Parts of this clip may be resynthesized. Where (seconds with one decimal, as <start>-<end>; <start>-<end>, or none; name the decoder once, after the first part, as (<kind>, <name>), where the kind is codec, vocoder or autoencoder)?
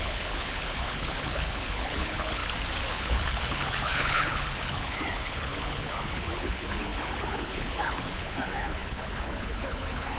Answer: 0.0-2.4 (codec, HILCodec); 2.9-10.2